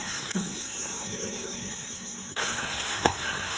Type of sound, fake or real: fake